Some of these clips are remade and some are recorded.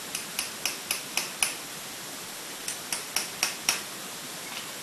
recorded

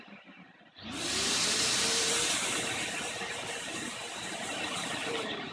remade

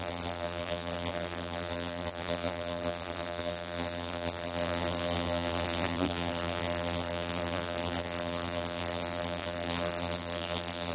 remade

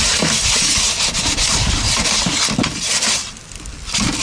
recorded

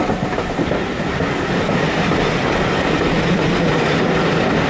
recorded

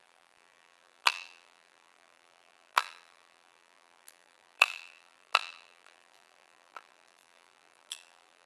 remade